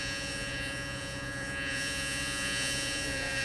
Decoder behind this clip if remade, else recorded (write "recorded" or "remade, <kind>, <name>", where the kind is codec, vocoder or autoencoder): remade, vocoder, Vocos